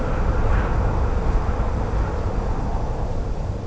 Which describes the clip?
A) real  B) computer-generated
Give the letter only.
A